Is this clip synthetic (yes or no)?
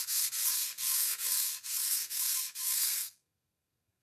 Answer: yes